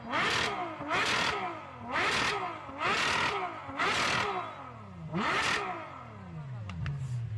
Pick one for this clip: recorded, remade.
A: recorded